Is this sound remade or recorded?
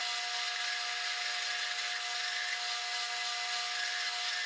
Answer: recorded